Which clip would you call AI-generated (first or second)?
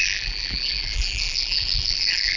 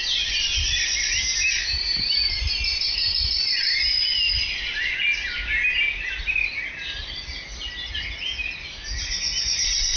first